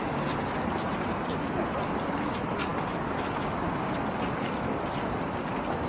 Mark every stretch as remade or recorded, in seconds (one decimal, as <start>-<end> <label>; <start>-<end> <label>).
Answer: 0.0-5.9 recorded